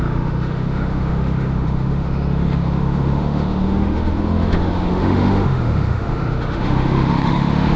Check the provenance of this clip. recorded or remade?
remade